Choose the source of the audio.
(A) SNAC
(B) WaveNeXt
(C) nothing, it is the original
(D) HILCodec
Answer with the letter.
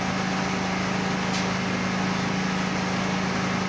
C